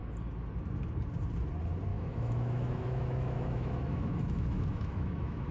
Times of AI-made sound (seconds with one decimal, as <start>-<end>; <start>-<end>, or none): 1.9-5.5

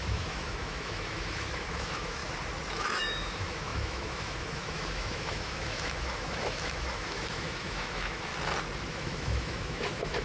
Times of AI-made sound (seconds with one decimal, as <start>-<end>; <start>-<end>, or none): 0.0-2.2; 2.7-8.3; 8.9-10.2

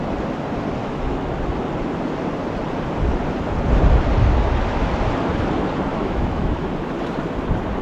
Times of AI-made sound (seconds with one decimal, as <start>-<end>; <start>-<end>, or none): 0.8-1.3; 5.9-6.7

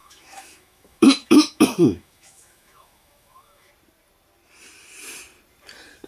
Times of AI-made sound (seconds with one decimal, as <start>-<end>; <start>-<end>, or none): 0.0-3.7

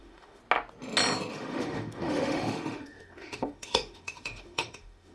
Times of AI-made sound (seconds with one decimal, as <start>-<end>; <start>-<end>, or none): 0.0-0.4; 1.3-5.1

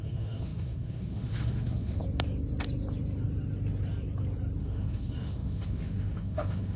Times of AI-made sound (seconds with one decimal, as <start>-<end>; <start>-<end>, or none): 0.0-2.0; 4.6-6.8

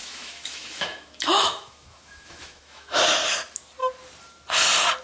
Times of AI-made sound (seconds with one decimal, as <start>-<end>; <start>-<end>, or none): 0.0-3.0

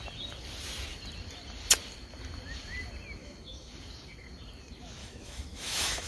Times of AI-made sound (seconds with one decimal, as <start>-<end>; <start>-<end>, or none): 3.2-3.7; 5.0-6.1